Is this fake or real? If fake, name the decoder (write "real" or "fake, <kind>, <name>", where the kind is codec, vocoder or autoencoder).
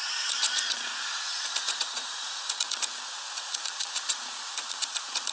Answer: fake, vocoder, Vocos